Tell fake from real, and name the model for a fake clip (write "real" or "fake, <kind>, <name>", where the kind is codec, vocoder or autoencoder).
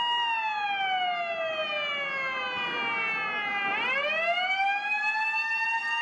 real